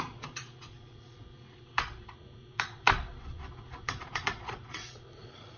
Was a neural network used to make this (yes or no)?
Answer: yes